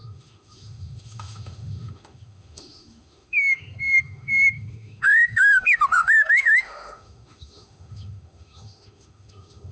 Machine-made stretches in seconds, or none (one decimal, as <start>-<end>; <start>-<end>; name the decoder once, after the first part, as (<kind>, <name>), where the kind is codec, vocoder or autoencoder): 0.0-9.7 (autoencoder, DAC-VAE)